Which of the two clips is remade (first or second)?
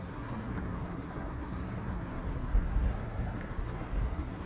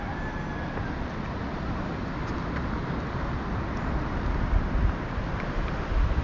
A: first